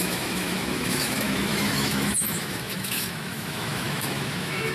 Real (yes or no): no